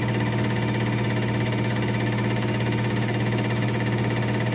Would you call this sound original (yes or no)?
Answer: no